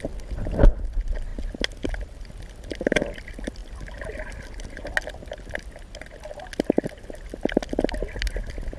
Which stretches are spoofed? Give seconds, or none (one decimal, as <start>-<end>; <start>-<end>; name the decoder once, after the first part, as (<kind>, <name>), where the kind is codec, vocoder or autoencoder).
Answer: none